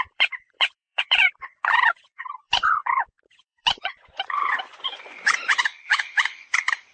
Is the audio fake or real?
fake